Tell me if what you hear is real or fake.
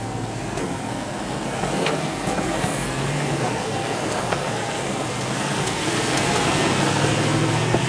fake